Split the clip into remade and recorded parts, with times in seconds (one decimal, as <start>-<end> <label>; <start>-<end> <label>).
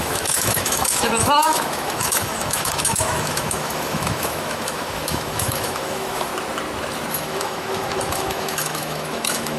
0.0-6.3 remade; 6.3-7.1 recorded; 7.1-9.6 remade